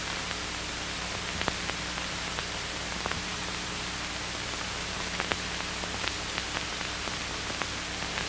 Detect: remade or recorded recorded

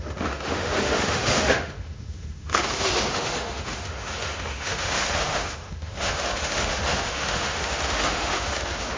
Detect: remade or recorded remade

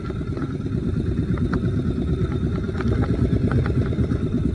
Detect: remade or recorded recorded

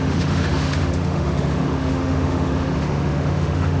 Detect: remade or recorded remade